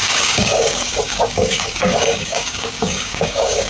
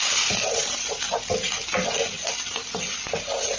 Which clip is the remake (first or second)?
first